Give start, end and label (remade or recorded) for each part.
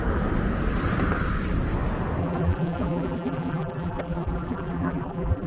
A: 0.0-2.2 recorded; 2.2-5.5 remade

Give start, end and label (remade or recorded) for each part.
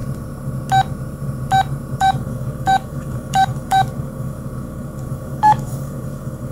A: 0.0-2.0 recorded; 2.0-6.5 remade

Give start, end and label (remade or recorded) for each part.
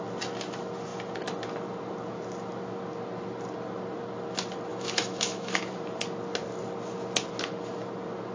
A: 0.0-4.7 recorded; 4.7-5.6 remade; 5.6-8.3 recorded